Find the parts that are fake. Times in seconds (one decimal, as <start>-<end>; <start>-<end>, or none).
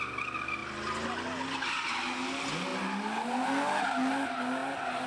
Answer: none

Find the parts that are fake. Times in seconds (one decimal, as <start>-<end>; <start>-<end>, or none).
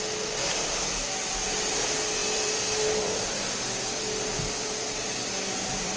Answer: 2.2-6.0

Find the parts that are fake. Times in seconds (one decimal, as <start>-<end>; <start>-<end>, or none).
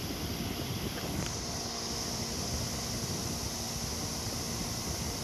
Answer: none